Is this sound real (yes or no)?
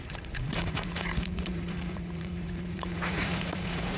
no